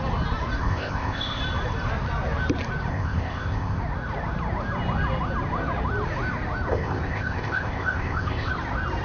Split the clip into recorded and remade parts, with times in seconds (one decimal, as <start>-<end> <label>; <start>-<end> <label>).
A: 0.0-0.6 recorded; 0.6-1.4 remade; 1.4-2.9 recorded; 2.9-3.8 remade; 3.8-6.7 recorded; 6.7-8.5 remade; 8.5-9.0 recorded